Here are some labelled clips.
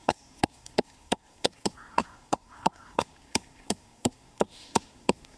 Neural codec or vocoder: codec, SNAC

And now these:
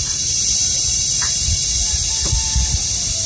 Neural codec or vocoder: none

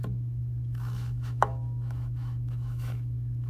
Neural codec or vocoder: autoencoder, DAC-VAE